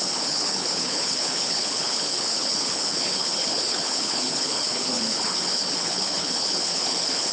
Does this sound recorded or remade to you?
remade